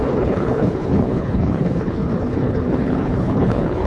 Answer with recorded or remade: remade